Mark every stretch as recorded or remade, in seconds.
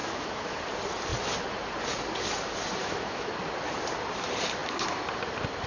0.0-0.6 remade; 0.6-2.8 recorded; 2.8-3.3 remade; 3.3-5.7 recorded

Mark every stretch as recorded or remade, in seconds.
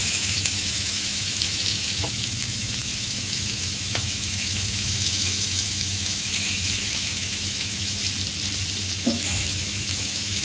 0.0-8.0 remade; 8.0-8.8 recorded; 8.8-10.4 remade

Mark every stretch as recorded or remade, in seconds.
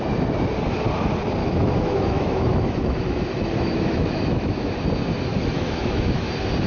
0.0-1.4 recorded; 1.4-4.7 remade; 4.7-5.3 recorded; 5.3-6.3 remade; 6.3-6.7 recorded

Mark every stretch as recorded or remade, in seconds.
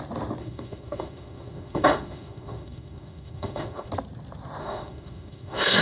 0.0-0.4 recorded; 0.4-3.9 remade; 3.9-4.6 recorded; 4.6-5.8 remade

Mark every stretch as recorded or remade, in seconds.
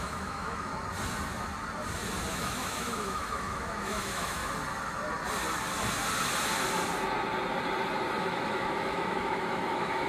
0.0-0.7 remade; 0.7-2.3 recorded; 2.3-4.4 remade; 4.4-8.2 recorded; 8.2-10.1 remade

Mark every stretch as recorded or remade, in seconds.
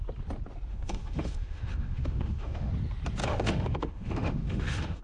0.0-0.7 recorded; 0.7-2.7 remade; 2.7-3.2 recorded; 3.2-5.0 remade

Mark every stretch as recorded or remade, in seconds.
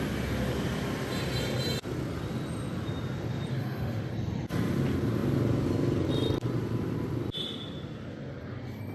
0.0-3.5 recorded; 3.5-4.1 remade; 4.1-8.9 recorded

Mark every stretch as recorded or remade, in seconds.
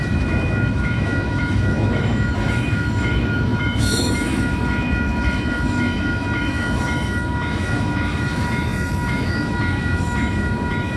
0.0-11.0 remade